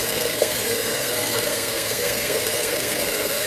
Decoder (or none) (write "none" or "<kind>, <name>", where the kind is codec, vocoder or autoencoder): codec, SNAC